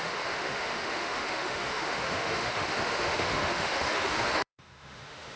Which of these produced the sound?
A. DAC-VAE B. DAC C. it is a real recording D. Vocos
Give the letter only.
A